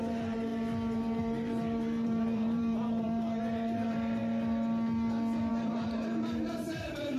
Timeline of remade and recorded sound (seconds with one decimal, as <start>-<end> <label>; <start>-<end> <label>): 0.0-0.5 remade; 0.5-1.2 recorded; 1.2-4.2 remade; 4.2-5.5 recorded; 5.5-7.2 remade